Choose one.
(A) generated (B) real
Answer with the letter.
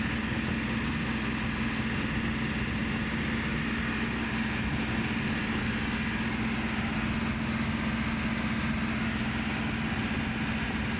B